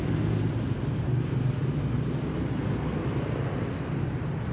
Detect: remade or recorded recorded